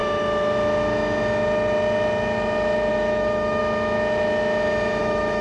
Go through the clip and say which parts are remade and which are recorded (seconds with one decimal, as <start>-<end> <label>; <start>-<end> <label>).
0.0-2.9 recorded; 2.9-3.6 remade; 3.6-5.0 recorded; 5.0-5.4 remade